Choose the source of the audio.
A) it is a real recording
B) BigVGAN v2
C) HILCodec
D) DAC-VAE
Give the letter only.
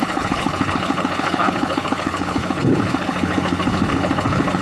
C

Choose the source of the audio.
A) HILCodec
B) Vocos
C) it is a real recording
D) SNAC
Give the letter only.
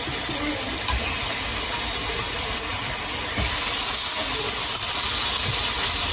C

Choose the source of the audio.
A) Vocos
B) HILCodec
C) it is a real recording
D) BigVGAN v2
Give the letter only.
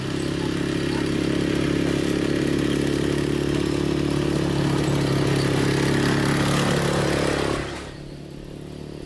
C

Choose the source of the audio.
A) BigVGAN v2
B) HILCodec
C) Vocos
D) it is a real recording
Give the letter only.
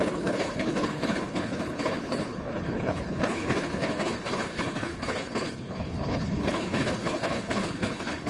B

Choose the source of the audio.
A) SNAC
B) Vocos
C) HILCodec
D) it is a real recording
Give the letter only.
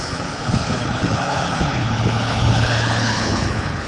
C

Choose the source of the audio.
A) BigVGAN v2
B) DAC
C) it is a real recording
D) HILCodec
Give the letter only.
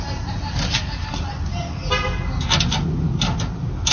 C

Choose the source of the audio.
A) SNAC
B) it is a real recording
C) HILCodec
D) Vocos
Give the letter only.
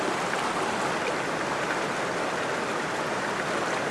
B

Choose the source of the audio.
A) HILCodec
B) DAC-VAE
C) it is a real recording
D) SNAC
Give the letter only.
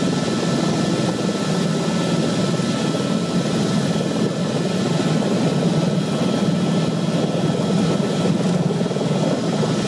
C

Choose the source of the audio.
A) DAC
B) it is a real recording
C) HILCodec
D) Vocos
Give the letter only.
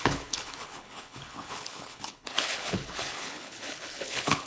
C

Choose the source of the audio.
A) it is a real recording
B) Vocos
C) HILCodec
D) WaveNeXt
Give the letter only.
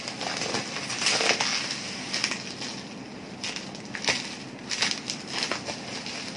A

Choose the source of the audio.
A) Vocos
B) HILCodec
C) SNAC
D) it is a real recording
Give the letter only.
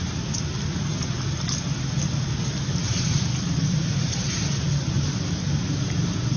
D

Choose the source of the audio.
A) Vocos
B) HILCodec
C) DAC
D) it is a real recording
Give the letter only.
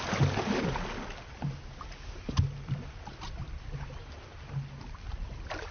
D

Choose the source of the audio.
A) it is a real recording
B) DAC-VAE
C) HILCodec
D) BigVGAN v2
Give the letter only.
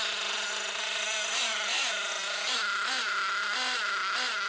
A